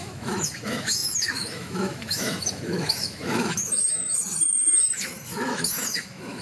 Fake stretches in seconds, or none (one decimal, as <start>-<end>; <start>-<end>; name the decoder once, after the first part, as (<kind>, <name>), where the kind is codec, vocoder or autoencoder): 0.0-6.4 (autoencoder, DAC-VAE)